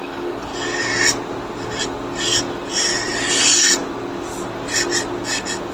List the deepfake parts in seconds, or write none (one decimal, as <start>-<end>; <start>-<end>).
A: 0.0-0.5; 3.3-3.8